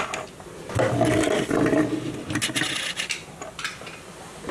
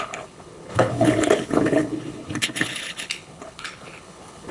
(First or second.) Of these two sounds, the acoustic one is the first